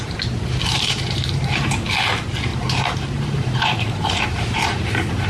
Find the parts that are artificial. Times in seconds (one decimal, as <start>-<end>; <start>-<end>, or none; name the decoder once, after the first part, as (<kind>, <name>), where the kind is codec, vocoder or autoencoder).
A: 0.7-1.6 (vocoder, BigVGAN v2); 2.5-5.3